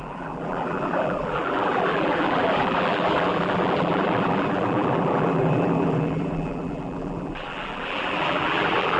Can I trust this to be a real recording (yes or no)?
no